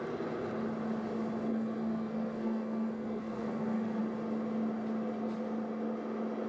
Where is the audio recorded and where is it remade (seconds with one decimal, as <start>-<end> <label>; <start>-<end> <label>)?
0.0-1.5 recorded; 1.5-4.0 remade; 4.0-6.5 recorded

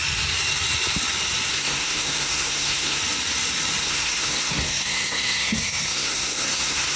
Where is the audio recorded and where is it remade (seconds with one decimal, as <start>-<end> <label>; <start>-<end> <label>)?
0.0-1.5 recorded; 1.5-3.0 remade; 3.0-3.8 recorded; 3.8-7.0 remade

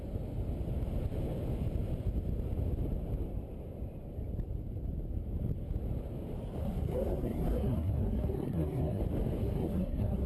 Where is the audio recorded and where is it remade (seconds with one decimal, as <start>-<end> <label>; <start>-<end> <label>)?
0.0-6.6 recorded; 6.6-9.0 remade; 9.0-9.4 recorded; 9.4-10.3 remade

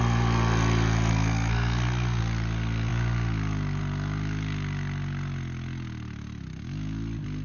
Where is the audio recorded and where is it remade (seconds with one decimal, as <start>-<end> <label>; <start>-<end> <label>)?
0.0-1.1 recorded; 1.1-2.2 remade; 2.2-7.4 recorded

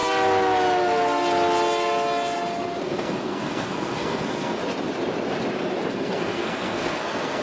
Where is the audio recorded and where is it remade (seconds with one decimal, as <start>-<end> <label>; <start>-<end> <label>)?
0.0-2.8 recorded; 2.8-4.6 remade; 4.6-5.9 recorded; 5.9-7.4 remade

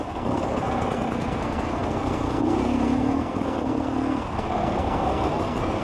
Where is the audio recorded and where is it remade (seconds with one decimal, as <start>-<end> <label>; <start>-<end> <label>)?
0.0-5.8 remade

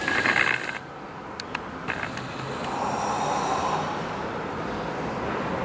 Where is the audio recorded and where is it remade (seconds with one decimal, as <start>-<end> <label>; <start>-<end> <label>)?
0.0-5.6 recorded

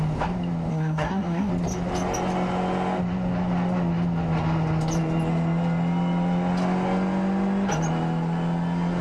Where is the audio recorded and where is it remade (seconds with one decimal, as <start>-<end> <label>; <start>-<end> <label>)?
0.0-0.7 recorded; 0.7-1.5 remade; 1.5-9.0 recorded